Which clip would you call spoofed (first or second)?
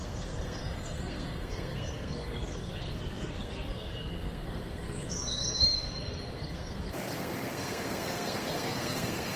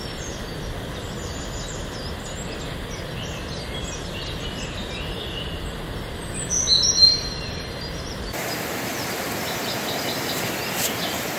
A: first